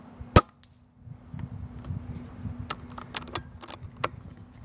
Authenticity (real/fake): real